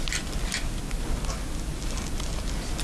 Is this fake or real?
real